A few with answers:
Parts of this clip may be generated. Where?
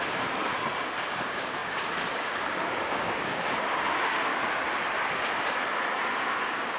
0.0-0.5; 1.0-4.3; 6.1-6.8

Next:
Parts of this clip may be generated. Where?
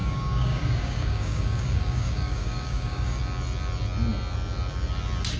0.0-3.2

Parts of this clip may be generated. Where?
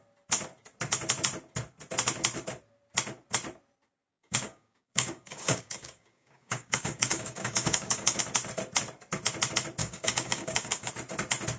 4.1-8.2; 9.8-10.9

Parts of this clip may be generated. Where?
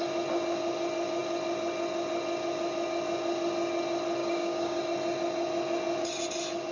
4.2-4.8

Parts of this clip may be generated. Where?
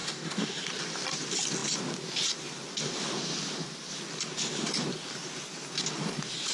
0.0-0.6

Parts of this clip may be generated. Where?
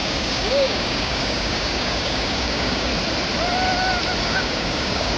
0.0-2.9; 4.2-5.2